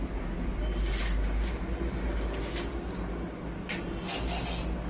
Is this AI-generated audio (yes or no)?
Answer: no